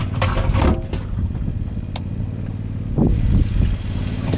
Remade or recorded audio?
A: recorded